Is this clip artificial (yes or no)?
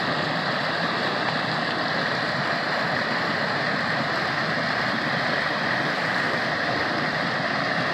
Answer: no